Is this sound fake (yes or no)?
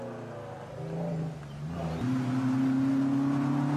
no